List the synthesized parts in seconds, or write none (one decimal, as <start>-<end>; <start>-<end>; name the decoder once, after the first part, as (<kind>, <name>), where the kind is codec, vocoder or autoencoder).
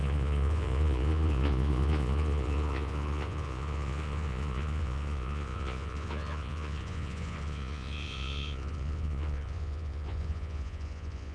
0.0-11.3 (vocoder, Vocos)